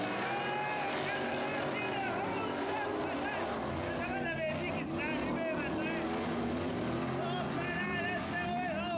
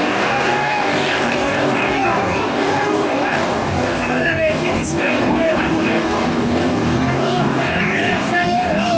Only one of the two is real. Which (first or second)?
first